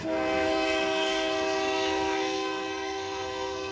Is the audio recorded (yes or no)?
no